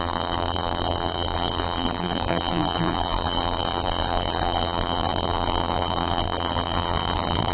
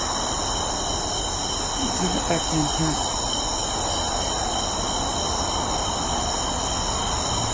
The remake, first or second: first